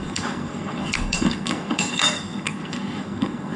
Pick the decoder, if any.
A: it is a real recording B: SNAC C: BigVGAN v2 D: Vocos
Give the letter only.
B